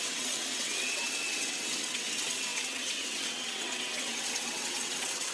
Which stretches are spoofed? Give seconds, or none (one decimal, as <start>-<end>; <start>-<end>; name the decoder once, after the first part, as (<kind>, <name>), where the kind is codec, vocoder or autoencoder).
0.0-5.3 (vocoder, WaveNeXt)